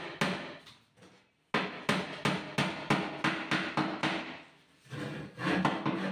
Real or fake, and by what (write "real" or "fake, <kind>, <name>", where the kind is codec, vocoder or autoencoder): real